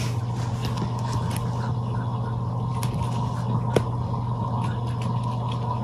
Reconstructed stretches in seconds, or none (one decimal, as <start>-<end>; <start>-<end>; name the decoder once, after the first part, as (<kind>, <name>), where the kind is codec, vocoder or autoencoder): none

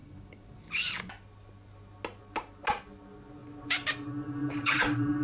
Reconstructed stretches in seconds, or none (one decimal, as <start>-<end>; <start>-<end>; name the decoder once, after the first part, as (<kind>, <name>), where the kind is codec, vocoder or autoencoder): 3.4-3.9 (vocoder, BigVGAN v2); 4.4-5.2

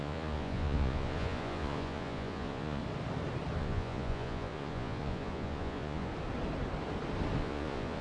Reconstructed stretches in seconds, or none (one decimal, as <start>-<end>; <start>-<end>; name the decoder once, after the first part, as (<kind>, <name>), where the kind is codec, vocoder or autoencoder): 0.0-2.8 (vocoder, Vocos); 3.6-6.1; 7.4-8.0

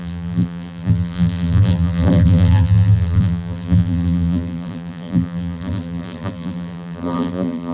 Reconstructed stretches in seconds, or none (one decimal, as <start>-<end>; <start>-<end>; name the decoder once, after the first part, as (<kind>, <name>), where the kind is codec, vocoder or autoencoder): 0.0-7.7 (vocoder, BigVGAN v2)

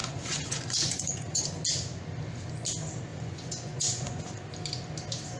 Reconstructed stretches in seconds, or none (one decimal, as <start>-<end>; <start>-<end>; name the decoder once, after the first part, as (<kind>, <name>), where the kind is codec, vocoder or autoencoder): 0.0-1.5 (vocoder, Vocos); 3.1-4.2

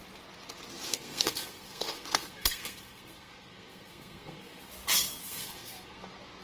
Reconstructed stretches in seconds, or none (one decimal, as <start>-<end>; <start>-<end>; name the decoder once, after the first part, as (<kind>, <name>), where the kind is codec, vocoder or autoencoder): 0.9-4.7 (codec, SNAC); 5.2-6.0

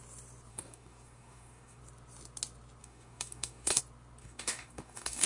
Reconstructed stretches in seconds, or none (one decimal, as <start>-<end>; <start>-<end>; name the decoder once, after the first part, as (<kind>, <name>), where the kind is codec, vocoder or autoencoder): 0.5-1.8 (codec, DAC); 2.8-3.8; 4.2-5.3

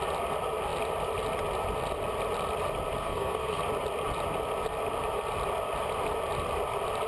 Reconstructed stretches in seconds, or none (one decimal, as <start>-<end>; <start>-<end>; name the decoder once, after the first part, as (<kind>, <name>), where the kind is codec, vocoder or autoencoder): 3.0-3.6 (codec, SNAC)